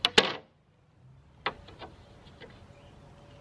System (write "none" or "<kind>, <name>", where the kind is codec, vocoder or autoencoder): none